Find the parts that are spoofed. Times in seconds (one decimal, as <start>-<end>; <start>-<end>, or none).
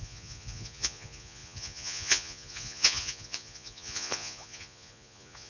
0.0-5.5